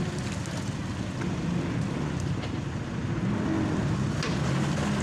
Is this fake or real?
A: real